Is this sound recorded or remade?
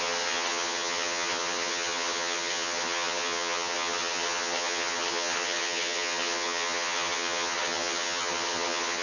remade